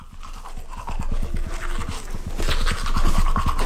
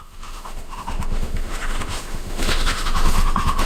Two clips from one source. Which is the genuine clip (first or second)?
first